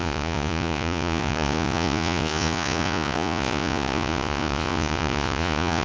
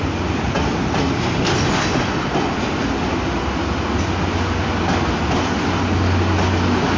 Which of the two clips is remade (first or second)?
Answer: first